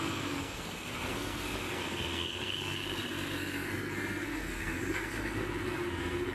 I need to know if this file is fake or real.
fake